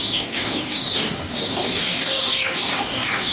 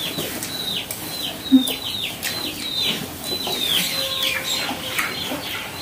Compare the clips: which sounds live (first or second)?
second